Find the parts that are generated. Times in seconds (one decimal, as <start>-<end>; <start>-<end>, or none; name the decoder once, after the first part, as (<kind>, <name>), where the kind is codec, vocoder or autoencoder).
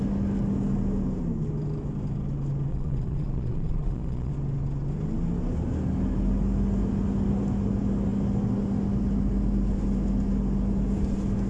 2.7-4.3 (vocoder, Vocos)